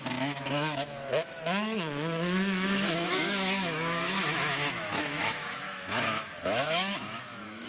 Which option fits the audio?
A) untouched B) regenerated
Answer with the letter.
B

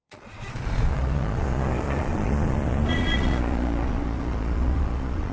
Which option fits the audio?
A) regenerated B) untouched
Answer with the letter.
A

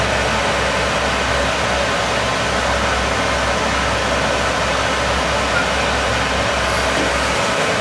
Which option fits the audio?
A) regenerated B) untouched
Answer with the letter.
B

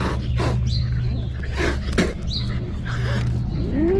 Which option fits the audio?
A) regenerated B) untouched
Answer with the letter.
B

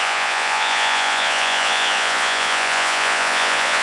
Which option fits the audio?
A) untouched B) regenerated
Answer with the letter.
B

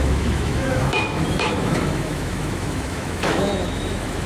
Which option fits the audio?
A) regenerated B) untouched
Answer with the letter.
A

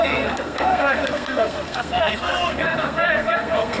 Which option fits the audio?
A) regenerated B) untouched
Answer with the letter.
A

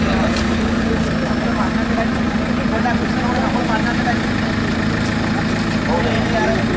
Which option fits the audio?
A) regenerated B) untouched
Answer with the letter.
B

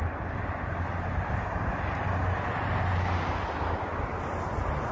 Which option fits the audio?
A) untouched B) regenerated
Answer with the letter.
A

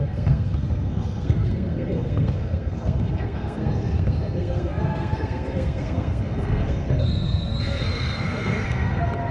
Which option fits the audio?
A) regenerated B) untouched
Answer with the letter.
A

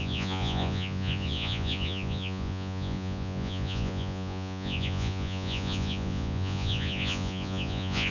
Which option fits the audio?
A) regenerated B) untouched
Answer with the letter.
A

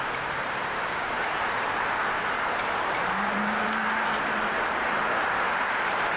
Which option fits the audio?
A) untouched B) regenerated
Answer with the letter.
B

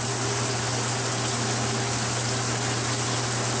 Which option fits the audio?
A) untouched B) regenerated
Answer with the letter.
A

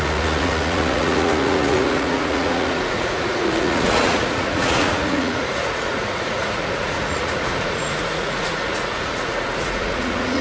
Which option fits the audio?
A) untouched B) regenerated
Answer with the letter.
B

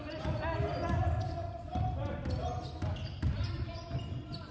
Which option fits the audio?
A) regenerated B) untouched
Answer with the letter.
B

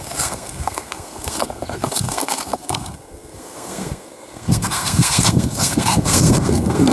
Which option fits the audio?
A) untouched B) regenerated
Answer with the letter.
B